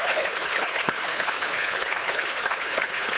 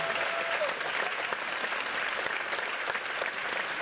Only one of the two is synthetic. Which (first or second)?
first